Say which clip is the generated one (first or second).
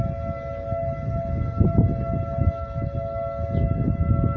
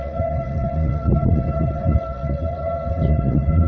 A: second